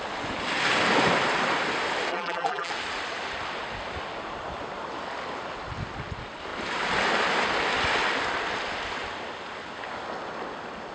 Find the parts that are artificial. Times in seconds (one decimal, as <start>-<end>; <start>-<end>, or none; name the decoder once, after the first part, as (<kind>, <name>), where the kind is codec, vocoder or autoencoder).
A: 2.1-2.7 (vocoder, BigVGAN v2)